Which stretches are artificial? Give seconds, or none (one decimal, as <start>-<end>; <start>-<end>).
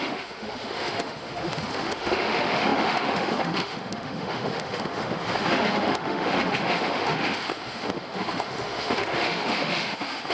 0.0-10.3